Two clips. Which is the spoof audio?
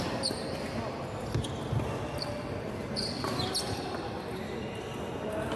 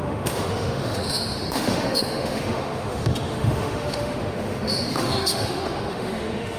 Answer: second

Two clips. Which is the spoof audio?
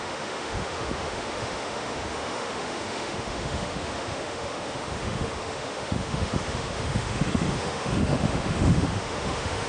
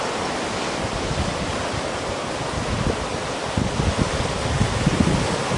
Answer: first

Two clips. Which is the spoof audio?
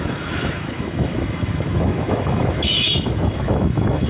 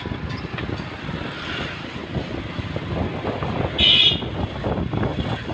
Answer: first